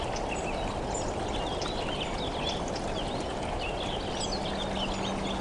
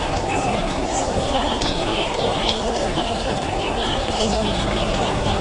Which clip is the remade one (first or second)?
second